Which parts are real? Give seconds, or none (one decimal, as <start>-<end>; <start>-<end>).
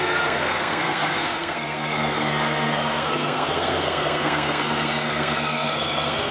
none